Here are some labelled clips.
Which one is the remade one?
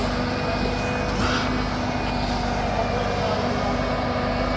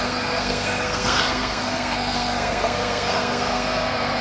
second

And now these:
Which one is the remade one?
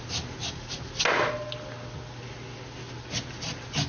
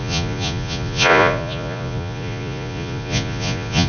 second